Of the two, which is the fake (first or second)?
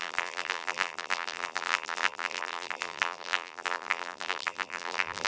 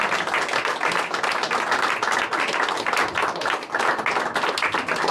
first